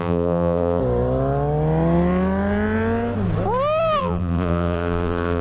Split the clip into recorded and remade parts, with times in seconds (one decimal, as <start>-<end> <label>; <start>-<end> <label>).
0.0-0.8 remade; 0.8-4.0 recorded; 4.0-5.4 remade